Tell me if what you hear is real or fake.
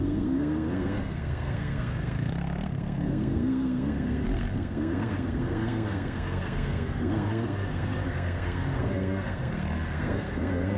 fake